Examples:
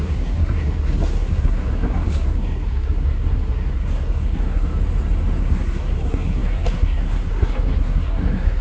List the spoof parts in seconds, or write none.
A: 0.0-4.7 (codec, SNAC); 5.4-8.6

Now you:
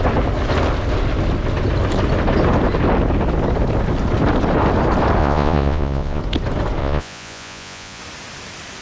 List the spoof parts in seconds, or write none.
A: 5.2-6.2 (vocoder, Vocos); 6.8-8.0

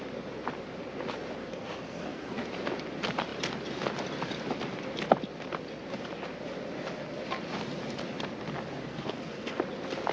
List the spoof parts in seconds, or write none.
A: 1.4-2.4 (codec, SNAC); 8.8-9.6

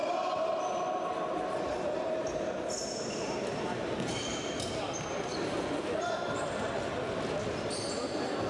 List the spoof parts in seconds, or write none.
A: 0.0-0.6 (vocoder, BigVGAN v2); 1.7-4.8; 7.4-8.5

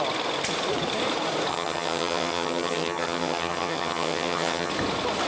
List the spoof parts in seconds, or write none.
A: 1.5-4.7 (vocoder, HiFi-GAN)

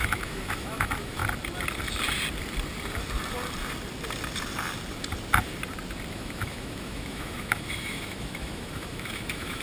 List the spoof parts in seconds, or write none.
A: 0.0-1.2 (autoencoder, DAC-VAE); 6.1-9.6